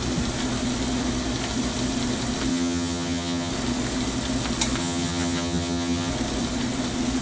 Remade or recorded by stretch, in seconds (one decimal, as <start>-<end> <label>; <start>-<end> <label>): 0.0-2.5 recorded; 2.5-3.5 remade; 3.5-4.8 recorded; 4.8-6.1 remade; 6.1-7.2 recorded